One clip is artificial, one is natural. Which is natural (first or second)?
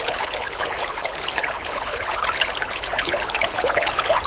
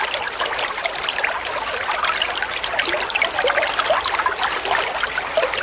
second